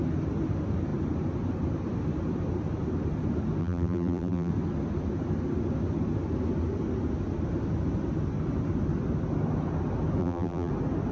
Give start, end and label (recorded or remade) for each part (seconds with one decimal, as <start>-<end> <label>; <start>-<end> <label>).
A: 0.0-3.6 recorded; 3.6-4.5 remade; 4.5-10.2 recorded; 10.2-10.7 remade; 10.7-11.1 recorded